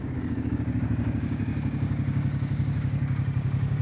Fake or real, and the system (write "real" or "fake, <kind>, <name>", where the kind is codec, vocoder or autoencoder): fake, codec, DAC